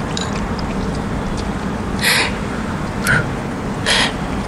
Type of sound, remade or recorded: remade